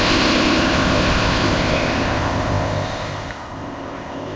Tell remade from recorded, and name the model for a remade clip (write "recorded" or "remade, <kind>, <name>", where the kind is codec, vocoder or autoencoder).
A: remade, codec, ZipCodec